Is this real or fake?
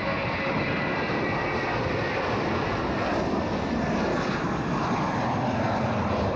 real